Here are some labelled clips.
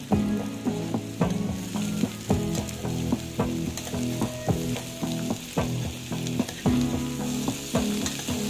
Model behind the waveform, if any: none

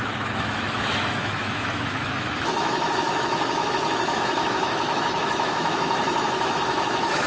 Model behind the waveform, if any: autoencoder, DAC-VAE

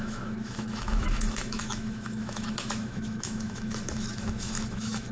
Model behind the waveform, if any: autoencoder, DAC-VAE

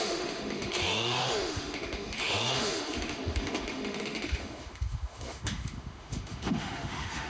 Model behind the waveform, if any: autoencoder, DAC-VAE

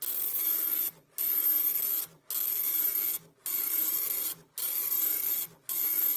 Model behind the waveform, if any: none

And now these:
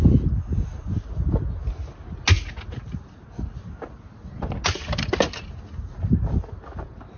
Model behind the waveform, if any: none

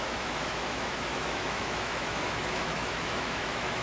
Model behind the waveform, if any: autoencoder, DAC-VAE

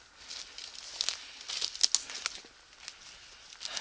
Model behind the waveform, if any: none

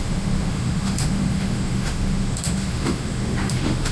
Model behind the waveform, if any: autoencoder, DAC-VAE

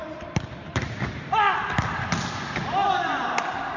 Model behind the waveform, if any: none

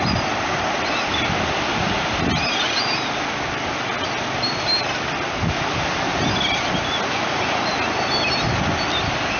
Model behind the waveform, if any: none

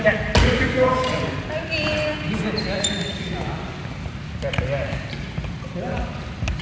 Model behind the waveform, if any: none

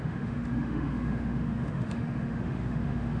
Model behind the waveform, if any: autoencoder, DAC-VAE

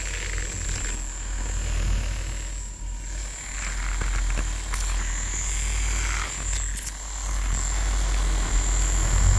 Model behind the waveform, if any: none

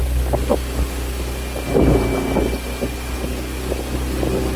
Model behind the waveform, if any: none